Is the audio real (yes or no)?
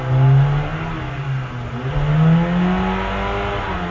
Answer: yes